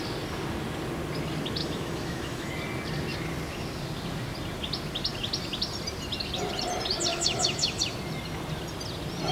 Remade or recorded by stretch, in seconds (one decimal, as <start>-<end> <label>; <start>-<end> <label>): 0.0-1.6 recorded; 1.6-2.5 remade; 2.5-7.1 recorded; 7.1-7.8 remade; 7.8-9.3 recorded